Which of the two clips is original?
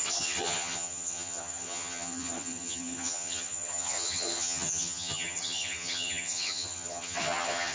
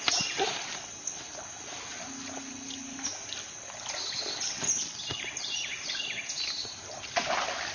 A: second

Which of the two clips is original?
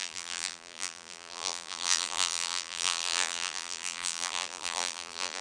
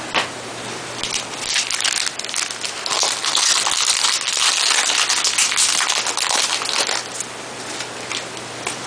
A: second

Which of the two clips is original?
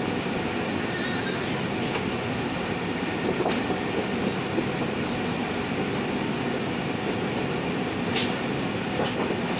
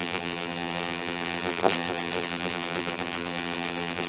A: first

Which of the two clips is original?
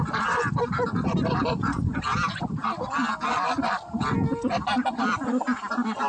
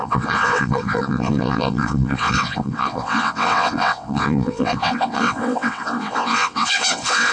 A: first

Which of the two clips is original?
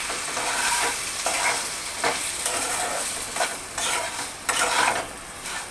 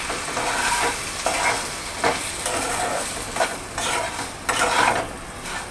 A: second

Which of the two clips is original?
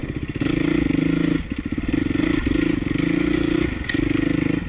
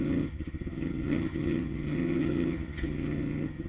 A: first